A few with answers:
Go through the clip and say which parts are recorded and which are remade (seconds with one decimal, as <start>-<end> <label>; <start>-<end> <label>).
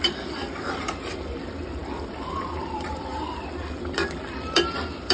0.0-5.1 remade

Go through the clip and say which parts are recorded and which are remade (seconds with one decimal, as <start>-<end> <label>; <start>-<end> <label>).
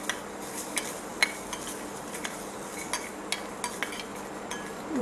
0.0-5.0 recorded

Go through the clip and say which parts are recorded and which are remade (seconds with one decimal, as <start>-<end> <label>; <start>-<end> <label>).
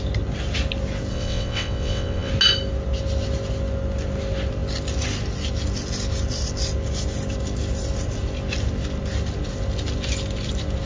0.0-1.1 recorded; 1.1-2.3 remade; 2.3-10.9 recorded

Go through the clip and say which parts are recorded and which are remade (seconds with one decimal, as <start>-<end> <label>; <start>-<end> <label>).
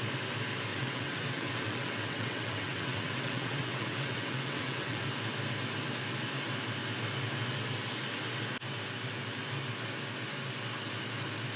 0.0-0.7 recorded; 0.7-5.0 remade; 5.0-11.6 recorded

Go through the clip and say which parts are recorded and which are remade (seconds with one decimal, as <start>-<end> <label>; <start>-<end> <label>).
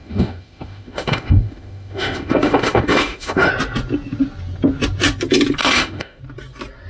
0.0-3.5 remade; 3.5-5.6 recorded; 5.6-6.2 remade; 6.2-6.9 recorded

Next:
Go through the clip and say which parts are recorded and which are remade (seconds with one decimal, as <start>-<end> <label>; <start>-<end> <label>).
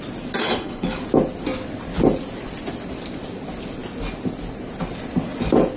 0.0-0.4 recorded; 0.4-1.0 remade; 1.0-5.8 recorded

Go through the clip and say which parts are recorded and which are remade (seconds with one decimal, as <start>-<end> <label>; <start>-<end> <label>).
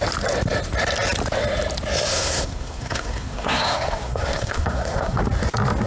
0.0-2.1 recorded; 2.1-5.2 remade; 5.2-5.9 recorded